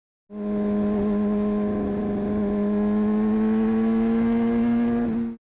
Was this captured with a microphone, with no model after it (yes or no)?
yes